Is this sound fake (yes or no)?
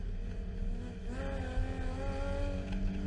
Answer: no